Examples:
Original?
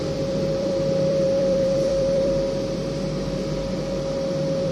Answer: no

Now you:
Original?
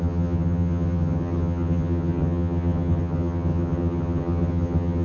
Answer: no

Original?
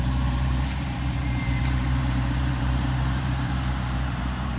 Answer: no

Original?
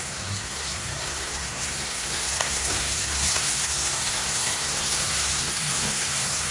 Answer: no